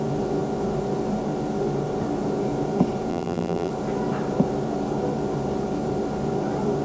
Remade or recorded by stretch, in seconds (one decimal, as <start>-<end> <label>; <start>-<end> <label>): 0.0-3.1 recorded; 3.1-3.7 remade; 3.7-6.8 recorded